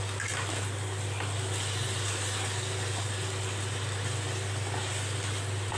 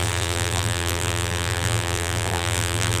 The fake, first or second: second